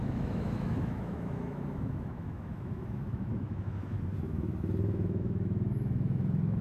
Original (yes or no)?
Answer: no